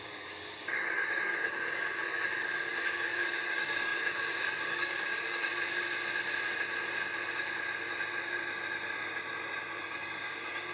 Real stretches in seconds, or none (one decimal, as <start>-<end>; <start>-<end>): 5.5-9.8